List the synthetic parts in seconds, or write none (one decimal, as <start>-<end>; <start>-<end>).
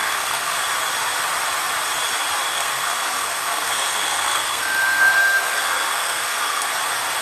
0.0-0.6; 2.5-6.7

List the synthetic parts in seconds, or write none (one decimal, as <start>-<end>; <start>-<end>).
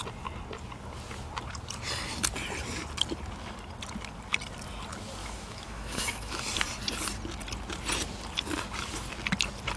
5.2-6.4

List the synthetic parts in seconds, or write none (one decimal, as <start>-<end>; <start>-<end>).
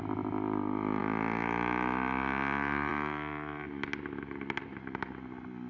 none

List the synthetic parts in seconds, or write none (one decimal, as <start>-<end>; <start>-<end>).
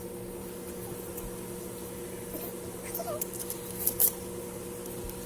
0.4-3.5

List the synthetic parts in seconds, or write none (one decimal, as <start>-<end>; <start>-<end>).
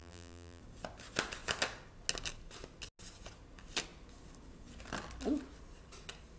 0.0-0.6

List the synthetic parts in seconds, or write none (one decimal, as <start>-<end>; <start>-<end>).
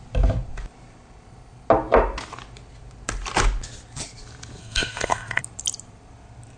4.6-5.4